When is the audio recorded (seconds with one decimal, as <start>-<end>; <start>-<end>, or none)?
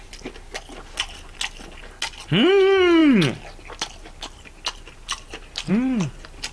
0.0-6.5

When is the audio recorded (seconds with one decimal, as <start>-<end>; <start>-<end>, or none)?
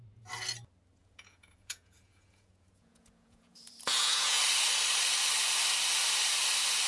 0.0-1.0; 4.4-6.9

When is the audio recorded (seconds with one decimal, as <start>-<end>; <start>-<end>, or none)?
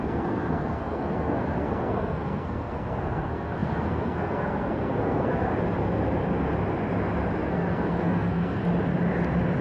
5.5-7.4; 8.6-9.6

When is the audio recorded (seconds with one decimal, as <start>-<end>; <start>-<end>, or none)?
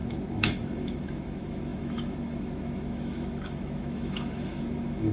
none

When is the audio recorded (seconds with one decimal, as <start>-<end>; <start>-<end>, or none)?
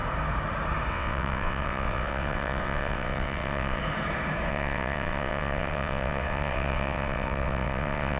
0.0-0.9; 3.8-4.5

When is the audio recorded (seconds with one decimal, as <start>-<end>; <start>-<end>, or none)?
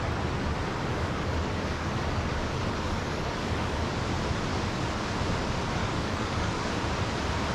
0.0-0.9; 3.9-4.5; 5.0-5.8; 6.7-7.5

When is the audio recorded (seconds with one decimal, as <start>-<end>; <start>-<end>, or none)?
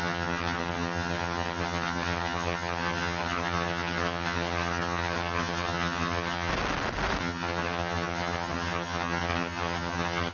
6.5-7.2